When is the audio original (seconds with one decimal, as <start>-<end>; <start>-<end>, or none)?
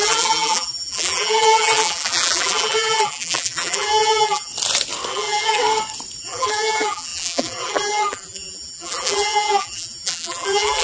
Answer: 4.5-5.1; 5.6-6.2